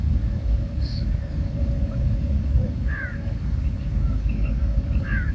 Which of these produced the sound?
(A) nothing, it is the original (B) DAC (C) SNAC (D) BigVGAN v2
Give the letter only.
B